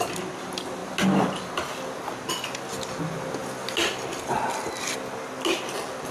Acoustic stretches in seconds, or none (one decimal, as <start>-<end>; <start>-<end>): 0.0-6.1